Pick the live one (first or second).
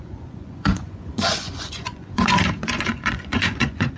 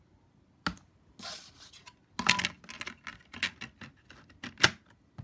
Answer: second